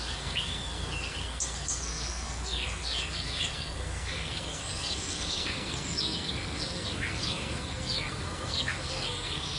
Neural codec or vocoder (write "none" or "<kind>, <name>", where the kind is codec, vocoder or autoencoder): codec, SNAC